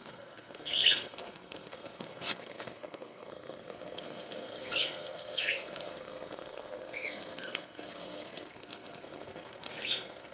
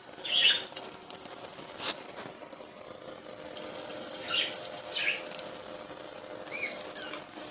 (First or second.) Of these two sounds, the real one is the second